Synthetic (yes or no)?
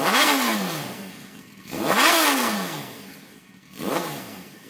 yes